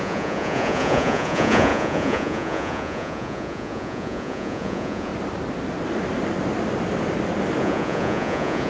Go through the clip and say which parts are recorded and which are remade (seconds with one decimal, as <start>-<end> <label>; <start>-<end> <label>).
0.0-5.1 remade; 5.1-7.6 recorded; 7.6-8.7 remade